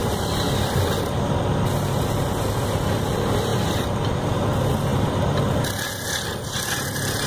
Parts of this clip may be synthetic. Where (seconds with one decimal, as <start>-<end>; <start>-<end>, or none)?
none